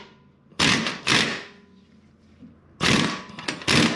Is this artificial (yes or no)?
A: no